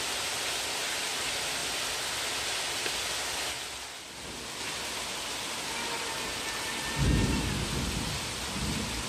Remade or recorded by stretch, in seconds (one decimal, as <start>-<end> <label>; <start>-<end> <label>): 0.0-9.1 recorded